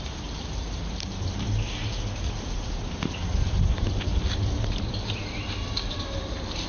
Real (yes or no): no